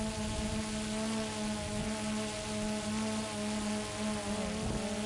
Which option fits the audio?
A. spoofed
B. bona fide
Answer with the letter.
B